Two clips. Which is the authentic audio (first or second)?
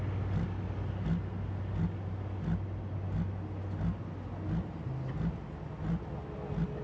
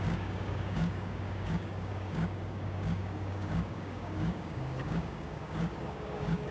first